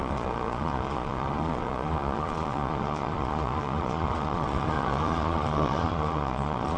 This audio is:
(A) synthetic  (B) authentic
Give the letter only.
A